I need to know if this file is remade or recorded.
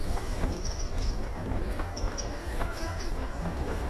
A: remade